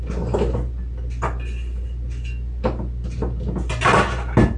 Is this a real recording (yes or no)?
yes